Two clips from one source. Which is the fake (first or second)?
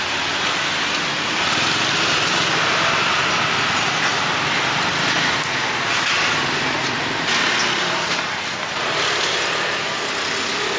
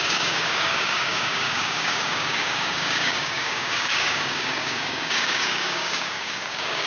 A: second